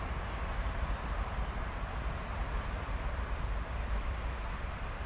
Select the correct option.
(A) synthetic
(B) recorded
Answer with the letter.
A